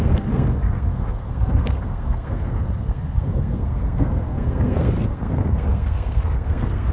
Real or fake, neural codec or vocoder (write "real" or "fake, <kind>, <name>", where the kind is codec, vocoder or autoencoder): fake, codec, SNAC